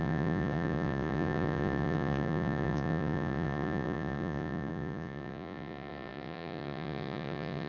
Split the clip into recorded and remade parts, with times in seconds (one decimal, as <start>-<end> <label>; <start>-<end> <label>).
0.0-7.7 remade